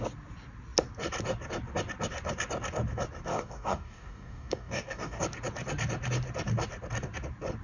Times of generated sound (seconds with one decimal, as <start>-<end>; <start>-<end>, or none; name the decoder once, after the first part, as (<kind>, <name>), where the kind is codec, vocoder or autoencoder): 3.3-5.2 (codec, DAC)